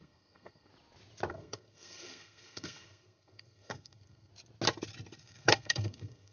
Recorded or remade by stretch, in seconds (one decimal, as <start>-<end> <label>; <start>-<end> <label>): 0.0-0.7 remade; 0.7-1.3 recorded; 1.3-4.3 remade; 4.3-5.2 recorded; 5.2-6.3 remade